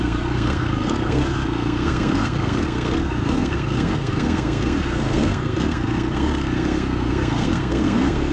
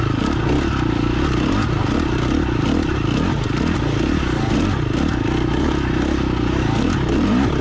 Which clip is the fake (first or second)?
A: first